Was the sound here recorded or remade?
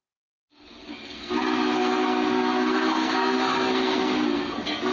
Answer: remade